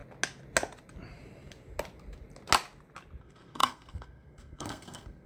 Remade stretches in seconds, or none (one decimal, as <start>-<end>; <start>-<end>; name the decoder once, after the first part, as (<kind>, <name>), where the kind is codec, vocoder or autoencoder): 3.2-5.3 (codec, SNAC)